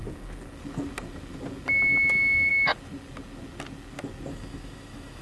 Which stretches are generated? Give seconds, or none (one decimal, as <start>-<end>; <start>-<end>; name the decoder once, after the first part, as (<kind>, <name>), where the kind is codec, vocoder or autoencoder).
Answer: 2.1-2.5 (autoencoder, DAC-VAE); 4.3-5.2